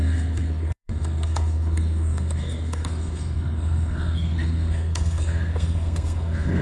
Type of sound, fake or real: fake